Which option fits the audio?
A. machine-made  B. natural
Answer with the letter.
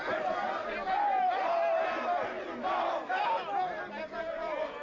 B